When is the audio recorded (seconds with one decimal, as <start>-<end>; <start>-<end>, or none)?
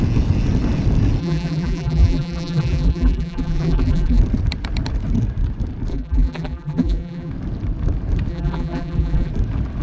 0.0-1.2; 4.2-5.9; 7.3-8.3; 9.3-9.8